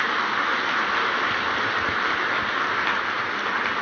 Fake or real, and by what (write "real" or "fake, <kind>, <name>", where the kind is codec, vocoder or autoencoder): real